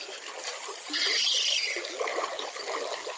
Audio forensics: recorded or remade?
recorded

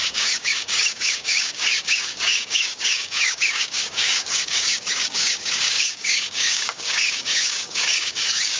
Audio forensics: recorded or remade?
remade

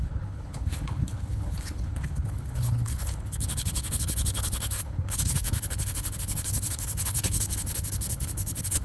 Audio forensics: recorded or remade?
remade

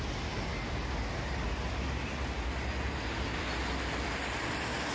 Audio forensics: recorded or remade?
recorded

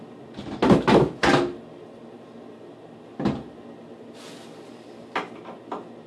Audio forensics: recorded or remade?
recorded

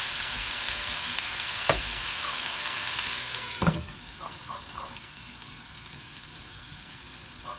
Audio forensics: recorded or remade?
remade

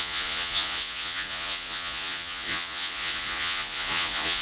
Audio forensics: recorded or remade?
remade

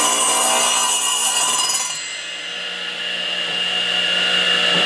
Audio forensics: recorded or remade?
recorded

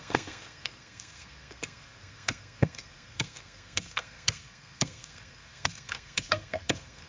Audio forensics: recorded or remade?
remade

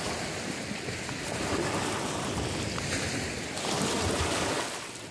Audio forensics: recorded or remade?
recorded